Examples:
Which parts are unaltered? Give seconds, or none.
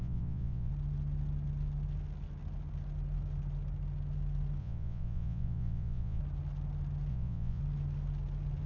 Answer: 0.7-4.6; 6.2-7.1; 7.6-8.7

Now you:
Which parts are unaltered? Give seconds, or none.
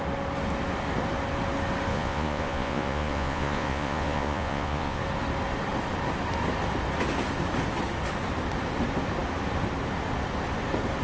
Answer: 0.0-1.9; 5.0-11.0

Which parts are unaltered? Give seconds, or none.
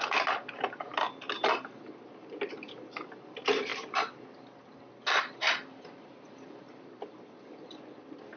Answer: 0.0-8.4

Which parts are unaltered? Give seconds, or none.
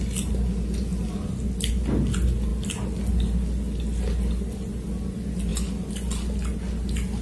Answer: 0.0-7.2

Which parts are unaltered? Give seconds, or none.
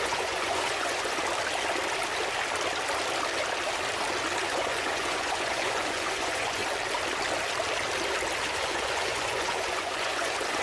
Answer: 1.2-4.4; 6.6-8.5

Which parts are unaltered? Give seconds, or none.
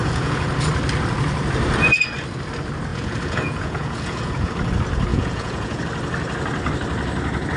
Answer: 0.5-2.9; 4.5-5.1; 5.8-7.6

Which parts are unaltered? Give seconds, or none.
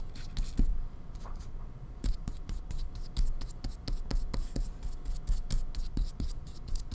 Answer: 0.0-0.7; 2.9-5.9